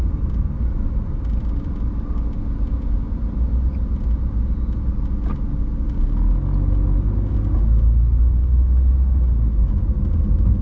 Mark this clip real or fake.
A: real